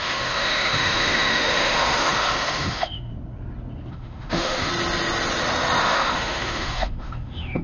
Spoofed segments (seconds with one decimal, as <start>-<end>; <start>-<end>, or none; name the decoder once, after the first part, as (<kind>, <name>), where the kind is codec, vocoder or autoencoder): 0.0-3.1 (autoencoder, DAC-VAE); 3.9-4.7; 5.8-7.6

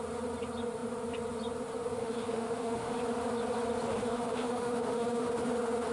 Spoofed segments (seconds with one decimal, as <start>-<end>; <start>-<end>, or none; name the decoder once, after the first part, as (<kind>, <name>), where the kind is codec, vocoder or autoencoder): 2.0-3.0 (autoencoder, DAC-VAE); 3.9-5.3

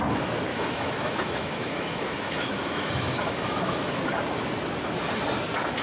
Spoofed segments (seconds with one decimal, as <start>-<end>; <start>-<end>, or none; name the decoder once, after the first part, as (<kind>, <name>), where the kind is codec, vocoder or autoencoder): 0.5-4.0 (autoencoder, DAC-VAE)

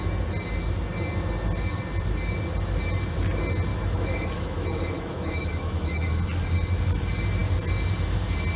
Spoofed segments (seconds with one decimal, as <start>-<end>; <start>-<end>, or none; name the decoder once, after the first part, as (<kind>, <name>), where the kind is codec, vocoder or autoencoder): 3.7-6.1 (autoencoder, DAC-VAE)

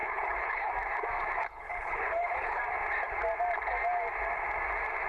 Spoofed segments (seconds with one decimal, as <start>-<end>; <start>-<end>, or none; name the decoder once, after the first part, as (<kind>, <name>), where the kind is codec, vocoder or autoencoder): 0.0-0.7 (codec, HILCodec); 1.4-2.6